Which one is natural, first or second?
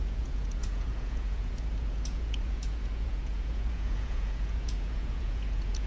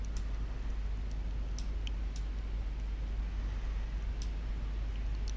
second